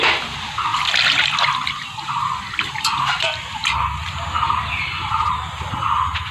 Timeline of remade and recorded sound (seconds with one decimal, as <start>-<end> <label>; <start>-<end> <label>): 0.0-0.7 recorded; 0.7-4.2 remade; 4.2-6.3 recorded